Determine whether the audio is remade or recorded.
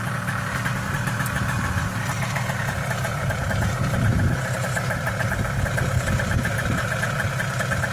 remade